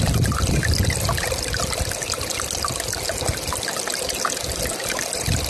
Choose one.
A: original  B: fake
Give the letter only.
A